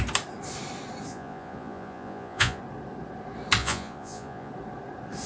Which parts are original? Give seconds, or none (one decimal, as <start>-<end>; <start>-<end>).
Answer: 0.0-1.1; 2.6-3.6; 4.5-5.3